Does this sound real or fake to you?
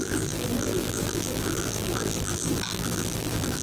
fake